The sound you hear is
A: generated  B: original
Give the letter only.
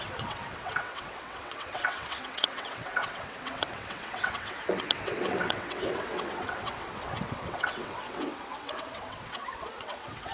A